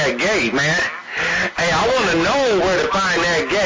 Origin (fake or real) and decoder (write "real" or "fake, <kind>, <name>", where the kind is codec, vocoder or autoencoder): real